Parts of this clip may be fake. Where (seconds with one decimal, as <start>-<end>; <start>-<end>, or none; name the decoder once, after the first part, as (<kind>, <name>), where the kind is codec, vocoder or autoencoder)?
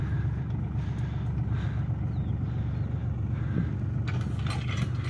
none